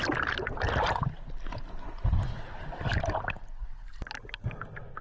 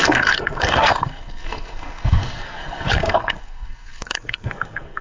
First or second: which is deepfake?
second